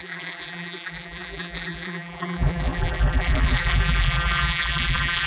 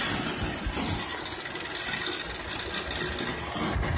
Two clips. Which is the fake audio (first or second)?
first